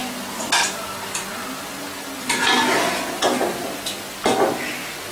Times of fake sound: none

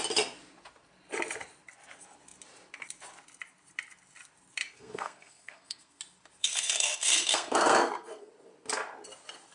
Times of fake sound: 4.7-6.0 (codec, SNAC); 6.4-8.3

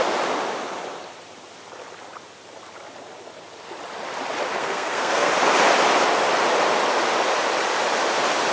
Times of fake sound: 4.6-5.3 (codec, SNAC)

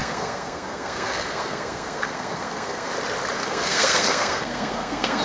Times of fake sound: 0.0-2.9 (codec, SNAC); 3.4-5.2

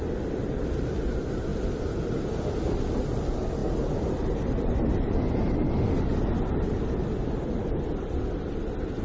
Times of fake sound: none

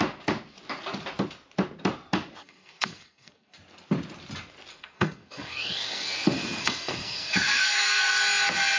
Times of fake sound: 2.4-3.6 (codec, SNAC); 4.7-8.1

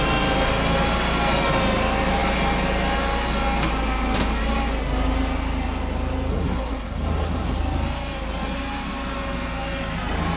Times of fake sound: 6.3-7.6 (codec, SNAC)